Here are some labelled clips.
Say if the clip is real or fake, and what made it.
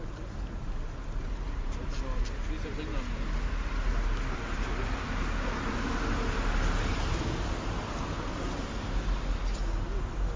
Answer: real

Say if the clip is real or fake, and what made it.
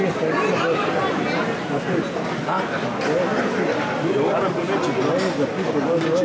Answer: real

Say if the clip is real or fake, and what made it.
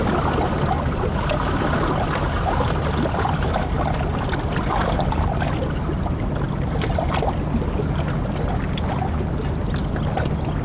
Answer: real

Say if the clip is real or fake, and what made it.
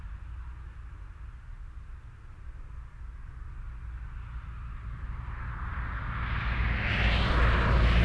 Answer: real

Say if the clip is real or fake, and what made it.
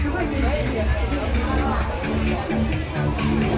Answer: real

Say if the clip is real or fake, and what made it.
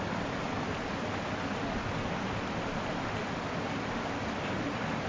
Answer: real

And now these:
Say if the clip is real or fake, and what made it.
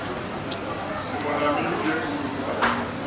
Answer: real